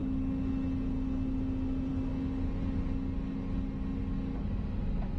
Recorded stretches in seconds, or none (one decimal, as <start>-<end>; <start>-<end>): 0.0-5.2